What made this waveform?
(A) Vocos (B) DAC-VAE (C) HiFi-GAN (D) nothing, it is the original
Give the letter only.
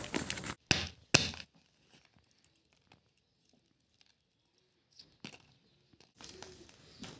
D